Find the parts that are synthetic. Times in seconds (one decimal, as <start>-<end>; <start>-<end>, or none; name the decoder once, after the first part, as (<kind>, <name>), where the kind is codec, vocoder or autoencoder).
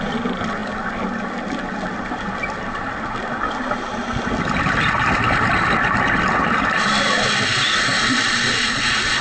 none